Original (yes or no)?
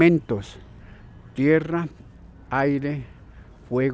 yes